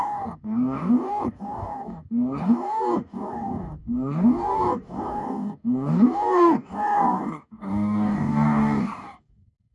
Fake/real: fake